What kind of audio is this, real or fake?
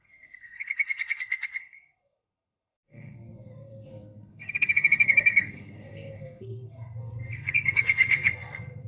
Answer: fake